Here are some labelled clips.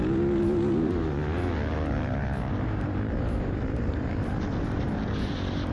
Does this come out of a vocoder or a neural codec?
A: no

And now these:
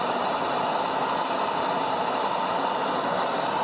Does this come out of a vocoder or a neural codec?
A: no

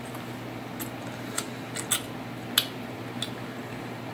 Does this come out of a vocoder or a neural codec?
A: no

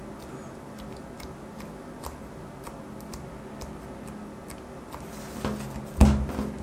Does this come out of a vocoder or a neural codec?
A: no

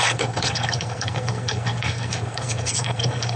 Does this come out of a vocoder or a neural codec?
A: yes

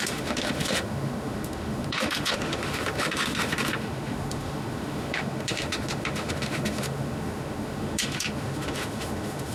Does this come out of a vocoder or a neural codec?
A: yes